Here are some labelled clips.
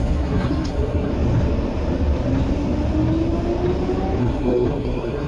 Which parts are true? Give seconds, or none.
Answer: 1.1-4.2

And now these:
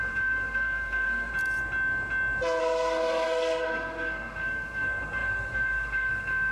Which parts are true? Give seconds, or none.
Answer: 1.3-2.6

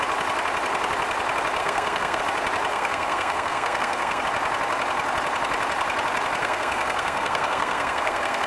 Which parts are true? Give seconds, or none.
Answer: 0.0-1.6; 2.2-2.7; 4.2-6.4

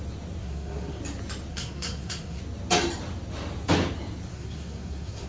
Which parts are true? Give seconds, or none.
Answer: 0.0-0.4; 1.0-1.5; 2.4-4.3

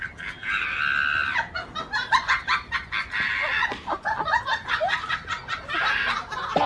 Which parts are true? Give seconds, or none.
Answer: 0.0-6.7